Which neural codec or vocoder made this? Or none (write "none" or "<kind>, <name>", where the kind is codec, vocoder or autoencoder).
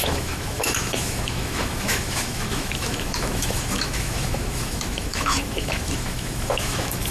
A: autoencoder, DAC-VAE